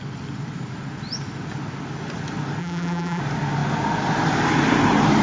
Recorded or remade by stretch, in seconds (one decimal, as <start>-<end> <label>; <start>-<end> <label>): 0.0-2.6 recorded; 2.6-3.2 remade; 3.2-5.2 recorded